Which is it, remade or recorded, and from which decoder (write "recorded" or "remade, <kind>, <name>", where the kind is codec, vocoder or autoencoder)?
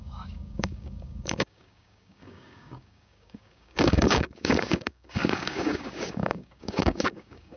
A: remade, codec, DAC